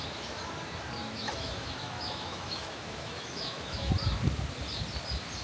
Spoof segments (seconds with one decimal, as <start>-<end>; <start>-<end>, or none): 1.0-3.9